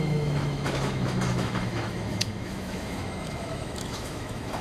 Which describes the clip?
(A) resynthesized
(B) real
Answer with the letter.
A